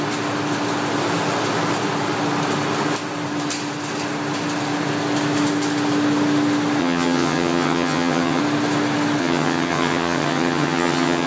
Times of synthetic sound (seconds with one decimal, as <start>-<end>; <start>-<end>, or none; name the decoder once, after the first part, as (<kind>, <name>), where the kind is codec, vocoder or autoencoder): 6.8-8.4 (vocoder, HiFi-GAN); 9.2-11.3